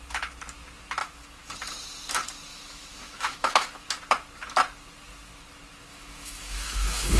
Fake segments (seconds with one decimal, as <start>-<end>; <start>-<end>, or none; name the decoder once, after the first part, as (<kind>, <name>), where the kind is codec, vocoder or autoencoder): 1.0-1.5 (autoencoder, DAC-VAE); 2.5-4.0; 5.9-7.2